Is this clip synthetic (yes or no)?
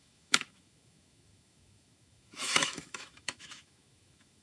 yes